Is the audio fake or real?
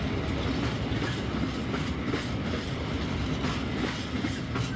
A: real